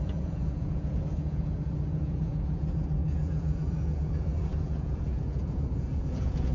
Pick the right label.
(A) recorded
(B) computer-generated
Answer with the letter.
B